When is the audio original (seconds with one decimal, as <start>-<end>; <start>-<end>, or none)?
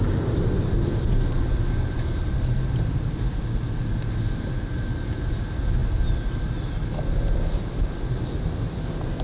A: 0.0-9.2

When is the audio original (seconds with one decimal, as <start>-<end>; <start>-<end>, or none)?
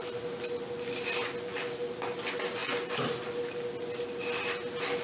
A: 0.0-5.0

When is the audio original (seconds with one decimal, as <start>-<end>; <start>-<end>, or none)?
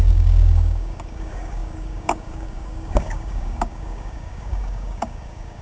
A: none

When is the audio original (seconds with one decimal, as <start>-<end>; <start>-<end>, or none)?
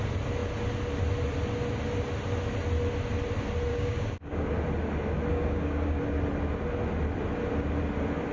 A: 0.0-3.7; 4.5-5.3; 6.0-8.3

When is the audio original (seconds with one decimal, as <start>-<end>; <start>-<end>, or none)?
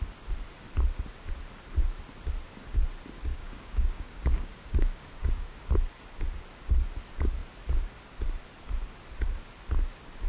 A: 0.0-3.3; 5.6-10.3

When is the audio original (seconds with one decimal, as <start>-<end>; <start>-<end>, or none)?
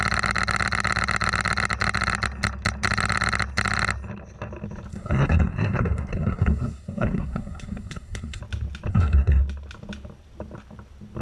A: 0.0-4.9; 8.4-8.9; 9.4-11.2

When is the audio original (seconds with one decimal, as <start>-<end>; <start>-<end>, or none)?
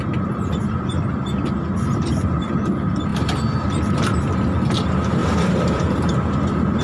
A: 0.0-5.2; 6.1-6.8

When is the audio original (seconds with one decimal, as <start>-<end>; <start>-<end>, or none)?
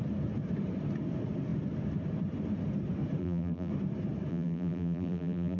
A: 0.0-3.2; 3.7-4.3